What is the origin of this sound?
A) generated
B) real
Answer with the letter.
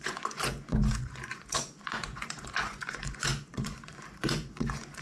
A